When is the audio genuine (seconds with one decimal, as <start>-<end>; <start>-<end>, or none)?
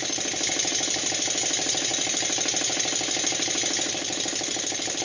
0.0-5.0